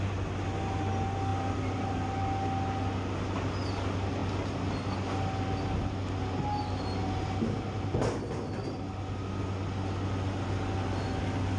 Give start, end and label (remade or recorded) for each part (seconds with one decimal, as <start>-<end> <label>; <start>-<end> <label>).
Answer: 0.0-11.6 recorded